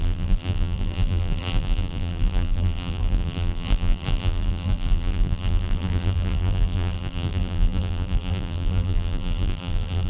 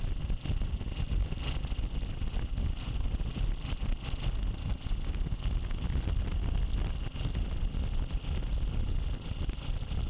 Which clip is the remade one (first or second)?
first